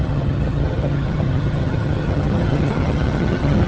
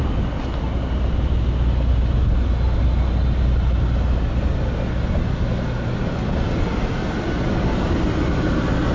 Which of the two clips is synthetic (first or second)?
first